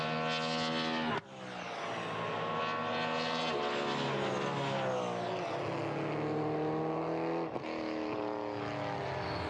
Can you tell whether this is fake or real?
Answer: real